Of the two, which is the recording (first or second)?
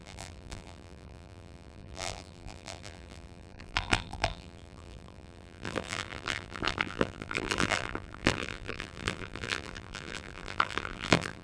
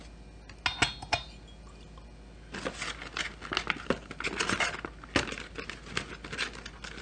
second